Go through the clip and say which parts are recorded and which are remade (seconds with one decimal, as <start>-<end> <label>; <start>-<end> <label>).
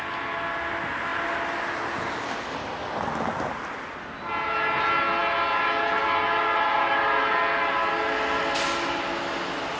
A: 0.0-9.8 recorded